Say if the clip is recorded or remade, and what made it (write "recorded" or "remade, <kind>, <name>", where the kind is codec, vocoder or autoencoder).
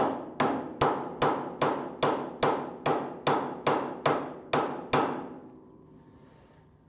recorded